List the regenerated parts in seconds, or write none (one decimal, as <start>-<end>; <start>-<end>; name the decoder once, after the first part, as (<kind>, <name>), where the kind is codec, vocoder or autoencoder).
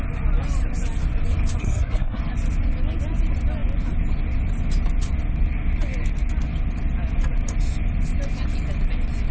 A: 1.6-2.2 (codec, SNAC)